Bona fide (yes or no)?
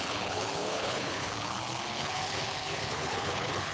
no